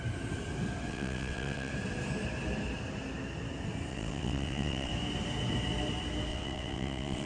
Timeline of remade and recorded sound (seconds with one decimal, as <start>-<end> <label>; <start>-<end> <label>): 0.0-0.9 recorded; 0.9-1.7 remade; 1.7-3.9 recorded; 3.9-4.9 remade; 4.9-6.3 recorded; 6.3-7.3 remade